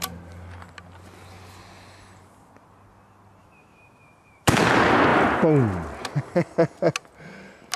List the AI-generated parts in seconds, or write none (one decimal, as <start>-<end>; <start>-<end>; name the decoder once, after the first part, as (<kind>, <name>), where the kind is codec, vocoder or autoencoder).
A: 3.4-4.6 (autoencoder, DAC-VAE)